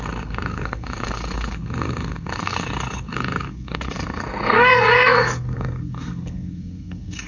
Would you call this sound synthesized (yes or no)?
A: yes